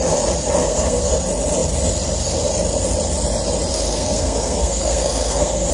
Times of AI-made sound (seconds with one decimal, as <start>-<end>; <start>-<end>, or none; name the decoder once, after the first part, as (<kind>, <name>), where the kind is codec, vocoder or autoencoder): 0.6-1.1 (codec, SNAC); 3.7-5.7